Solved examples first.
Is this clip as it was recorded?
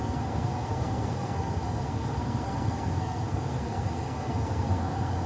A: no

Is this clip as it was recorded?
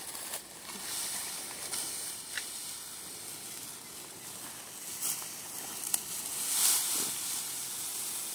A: yes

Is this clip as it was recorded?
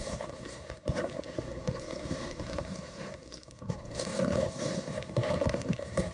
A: no